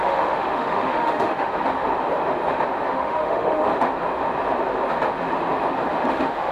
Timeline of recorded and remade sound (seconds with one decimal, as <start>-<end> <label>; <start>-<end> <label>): 0.0-1.5 remade; 1.5-2.9 recorded; 2.9-3.7 remade; 3.7-6.1 recorded; 6.1-6.5 remade